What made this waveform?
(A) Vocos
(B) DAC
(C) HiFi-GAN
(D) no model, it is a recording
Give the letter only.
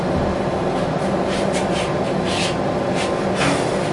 D